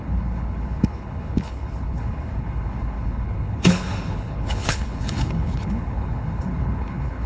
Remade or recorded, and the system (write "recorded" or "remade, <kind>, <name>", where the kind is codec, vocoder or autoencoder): remade, codec, HILCodec